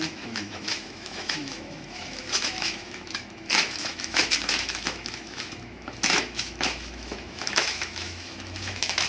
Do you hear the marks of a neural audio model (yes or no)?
yes